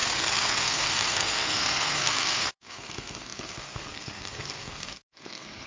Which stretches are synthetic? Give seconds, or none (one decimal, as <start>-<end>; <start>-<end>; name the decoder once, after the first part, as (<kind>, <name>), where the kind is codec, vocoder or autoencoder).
0.0-5.7 (codec, SNAC)

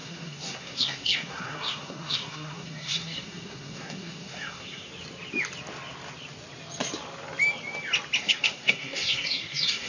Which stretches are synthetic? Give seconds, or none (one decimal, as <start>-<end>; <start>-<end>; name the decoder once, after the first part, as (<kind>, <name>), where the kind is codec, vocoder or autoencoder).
0.0-4.9 (codec, SNAC); 8.2-9.9

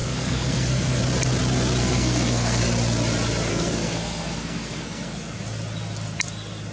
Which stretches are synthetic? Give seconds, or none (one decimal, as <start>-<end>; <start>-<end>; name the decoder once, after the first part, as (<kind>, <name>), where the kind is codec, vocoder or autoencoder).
0.0-1.0 (codec, SNAC); 1.8-2.6; 3.5-5.4